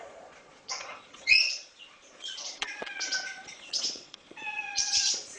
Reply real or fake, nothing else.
fake